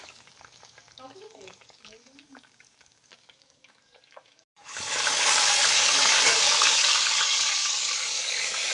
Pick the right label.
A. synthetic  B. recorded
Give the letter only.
A